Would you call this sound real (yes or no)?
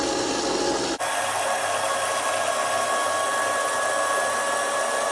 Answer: yes